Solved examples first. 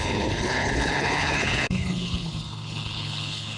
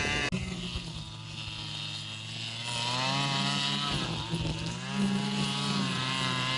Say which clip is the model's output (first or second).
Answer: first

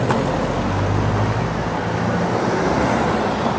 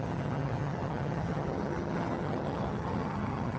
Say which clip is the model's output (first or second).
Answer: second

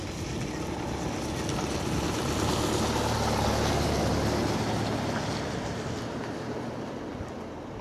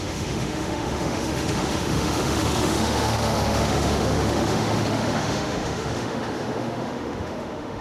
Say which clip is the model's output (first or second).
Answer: second